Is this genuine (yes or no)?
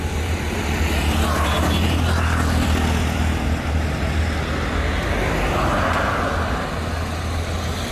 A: yes